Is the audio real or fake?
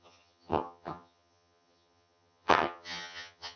fake